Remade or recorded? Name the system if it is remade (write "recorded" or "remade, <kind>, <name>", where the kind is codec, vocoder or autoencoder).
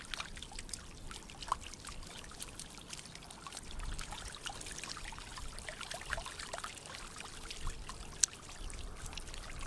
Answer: recorded